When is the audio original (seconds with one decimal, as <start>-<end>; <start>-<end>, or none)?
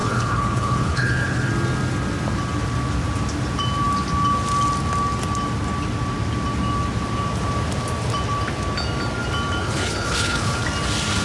1.5-9.6; 10.6-11.2